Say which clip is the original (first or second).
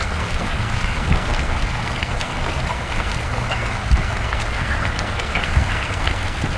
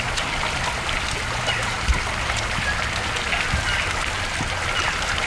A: second